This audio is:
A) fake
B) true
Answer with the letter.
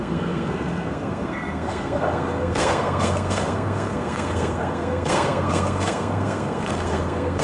A